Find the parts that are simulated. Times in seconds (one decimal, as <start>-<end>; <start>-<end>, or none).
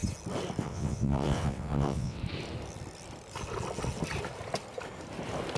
0.6-2.2